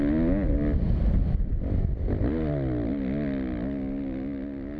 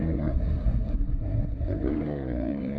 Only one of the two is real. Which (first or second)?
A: first